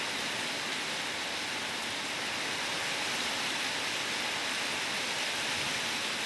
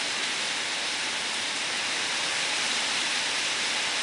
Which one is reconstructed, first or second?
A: second